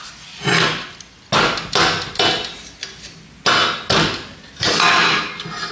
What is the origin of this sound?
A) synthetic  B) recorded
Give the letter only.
B